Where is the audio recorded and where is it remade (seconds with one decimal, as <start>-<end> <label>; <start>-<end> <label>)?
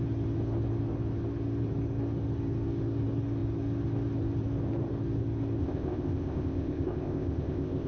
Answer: 0.0-5.6 recorded; 5.6-7.9 remade